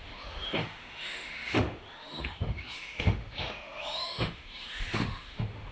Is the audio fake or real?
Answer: fake